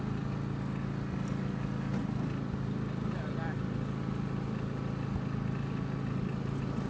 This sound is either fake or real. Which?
real